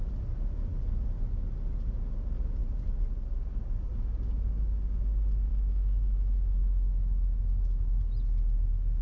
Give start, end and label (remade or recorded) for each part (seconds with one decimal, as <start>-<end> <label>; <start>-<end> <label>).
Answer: 0.0-5.5 recorded; 5.5-8.0 remade; 8.0-9.0 recorded